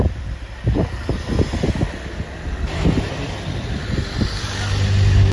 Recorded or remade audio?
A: recorded